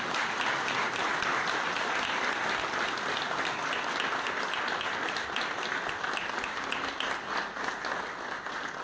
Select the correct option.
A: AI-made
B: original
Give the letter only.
B